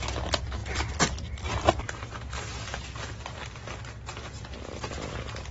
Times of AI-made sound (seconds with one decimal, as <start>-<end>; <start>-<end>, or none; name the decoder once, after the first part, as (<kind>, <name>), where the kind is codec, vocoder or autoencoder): 0.6-1.8 (vocoder, BigVGAN v2); 2.7-3.8

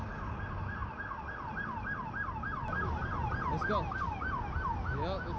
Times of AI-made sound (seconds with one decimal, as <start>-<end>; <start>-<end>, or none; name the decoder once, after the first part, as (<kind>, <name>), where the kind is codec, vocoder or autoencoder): none

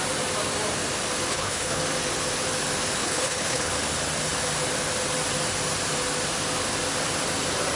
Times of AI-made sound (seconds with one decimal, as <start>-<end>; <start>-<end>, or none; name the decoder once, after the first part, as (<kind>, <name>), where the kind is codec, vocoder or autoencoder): 1.3-1.8 (codec, HILCodec); 3.0-3.7

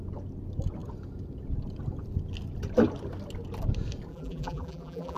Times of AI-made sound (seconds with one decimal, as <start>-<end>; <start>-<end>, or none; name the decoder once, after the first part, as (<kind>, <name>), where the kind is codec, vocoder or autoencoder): 4.1-5.2 (vocoder, BigVGAN v2)

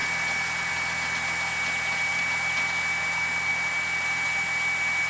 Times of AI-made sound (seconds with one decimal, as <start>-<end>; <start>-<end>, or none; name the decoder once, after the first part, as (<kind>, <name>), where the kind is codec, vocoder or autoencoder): none